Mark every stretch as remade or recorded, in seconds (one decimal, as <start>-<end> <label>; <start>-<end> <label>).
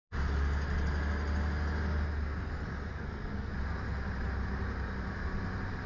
0.0-2.9 recorded; 2.9-3.5 remade; 3.5-5.9 recorded